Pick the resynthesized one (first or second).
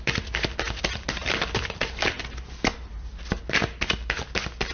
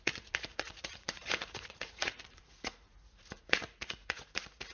second